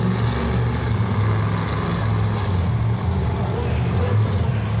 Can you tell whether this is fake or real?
real